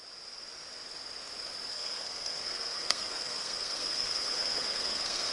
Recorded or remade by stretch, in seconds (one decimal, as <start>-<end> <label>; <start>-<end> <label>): 0.0-1.7 recorded; 1.7-5.3 remade